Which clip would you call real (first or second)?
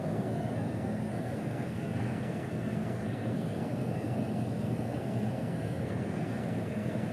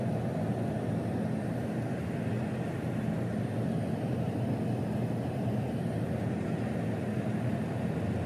second